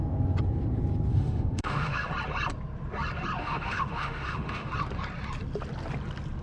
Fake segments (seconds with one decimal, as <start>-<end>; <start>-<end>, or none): 1.1-2.1; 3.4-4.7